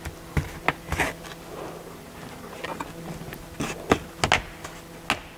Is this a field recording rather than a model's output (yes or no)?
yes